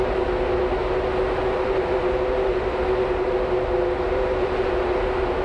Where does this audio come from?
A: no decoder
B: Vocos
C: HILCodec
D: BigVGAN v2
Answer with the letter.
A